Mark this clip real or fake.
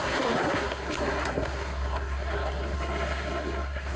fake